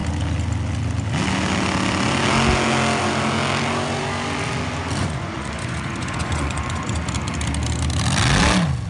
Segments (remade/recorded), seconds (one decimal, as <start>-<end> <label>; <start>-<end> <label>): 0.0-5.0 recorded; 5.0-7.0 remade; 7.0-8.9 recorded